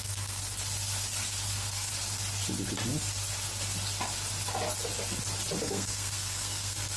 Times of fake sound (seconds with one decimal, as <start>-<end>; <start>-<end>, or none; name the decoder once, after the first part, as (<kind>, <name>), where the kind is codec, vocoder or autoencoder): 0.0-0.4 (codec, SNAC); 1.5-1.9; 5.6-7.0